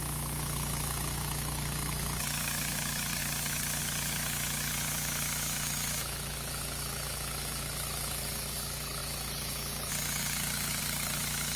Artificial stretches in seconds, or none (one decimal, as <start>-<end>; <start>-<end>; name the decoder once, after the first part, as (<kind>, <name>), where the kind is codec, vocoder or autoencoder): 0.0-11.6 (autoencoder, DAC-VAE)